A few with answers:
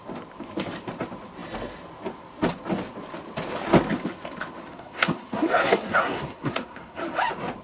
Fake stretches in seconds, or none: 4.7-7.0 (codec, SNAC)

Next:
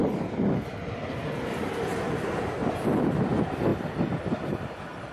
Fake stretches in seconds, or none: none

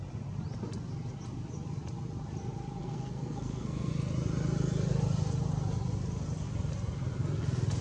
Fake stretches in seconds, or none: 2.8-3.9 (codec, SNAC)

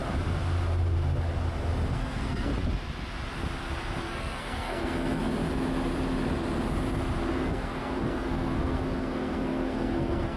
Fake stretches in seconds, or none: 1.9-2.5 (codec, SNAC); 4.0-5.2; 7.3-10.4

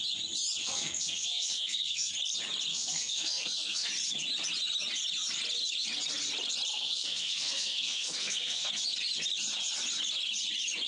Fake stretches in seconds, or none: 0.6-2.1 (codec, SNAC); 2.7-3.9; 6.7-8.7